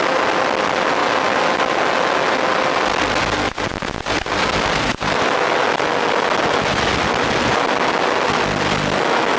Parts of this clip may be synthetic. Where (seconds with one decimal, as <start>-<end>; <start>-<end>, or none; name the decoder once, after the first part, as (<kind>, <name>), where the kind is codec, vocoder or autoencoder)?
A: none